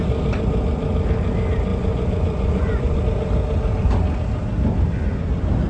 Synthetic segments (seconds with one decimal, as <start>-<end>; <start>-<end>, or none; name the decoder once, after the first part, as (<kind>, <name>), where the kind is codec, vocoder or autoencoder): 1.7-3.0 (vocoder, Vocos)